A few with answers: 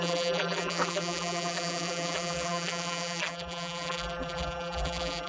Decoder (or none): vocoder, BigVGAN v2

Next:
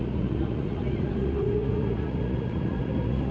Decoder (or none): vocoder, Vocos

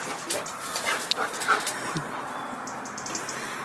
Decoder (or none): none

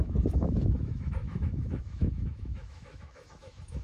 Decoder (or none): autoencoder, DAC-VAE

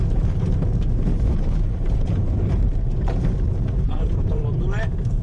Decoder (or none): vocoder, BigVGAN v2